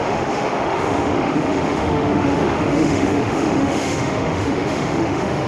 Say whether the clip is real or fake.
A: fake